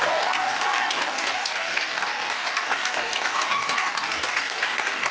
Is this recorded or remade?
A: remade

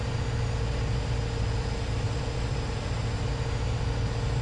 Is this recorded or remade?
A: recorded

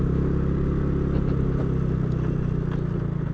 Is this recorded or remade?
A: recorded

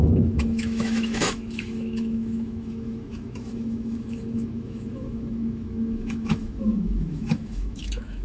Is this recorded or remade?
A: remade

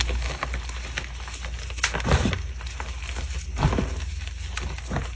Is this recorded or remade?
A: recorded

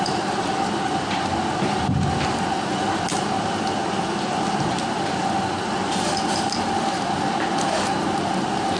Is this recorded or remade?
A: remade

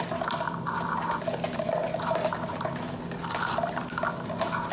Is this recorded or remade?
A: recorded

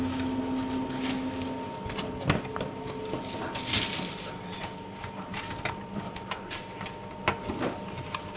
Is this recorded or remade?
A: recorded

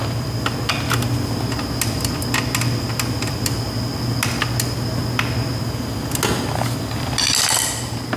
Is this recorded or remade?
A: recorded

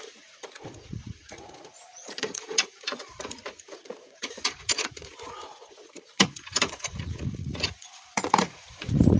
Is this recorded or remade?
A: remade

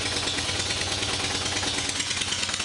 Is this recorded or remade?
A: remade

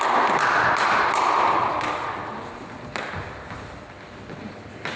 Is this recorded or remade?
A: recorded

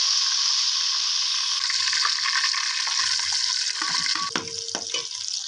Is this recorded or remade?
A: recorded